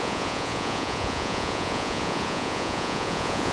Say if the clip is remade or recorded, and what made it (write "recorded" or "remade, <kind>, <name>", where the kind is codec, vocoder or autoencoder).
remade, vocoder, Vocos